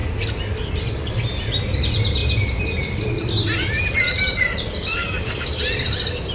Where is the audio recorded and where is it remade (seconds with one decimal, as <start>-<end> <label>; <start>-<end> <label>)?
0.0-5.0 recorded; 5.0-5.6 remade; 5.6-6.3 recorded